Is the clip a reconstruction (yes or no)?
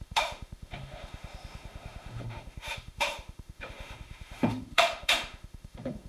yes